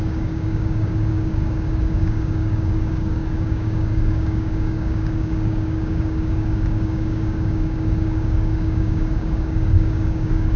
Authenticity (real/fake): fake